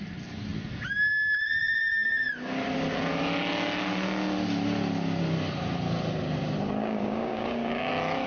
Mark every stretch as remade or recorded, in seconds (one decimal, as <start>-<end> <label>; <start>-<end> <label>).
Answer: 0.0-6.8 recorded; 6.8-7.9 remade; 7.9-8.3 recorded